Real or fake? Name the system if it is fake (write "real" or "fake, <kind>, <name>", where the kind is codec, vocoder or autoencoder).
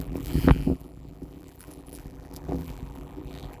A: fake, vocoder, BigVGAN v2